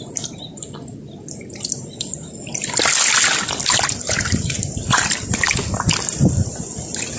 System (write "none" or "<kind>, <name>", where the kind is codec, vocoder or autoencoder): none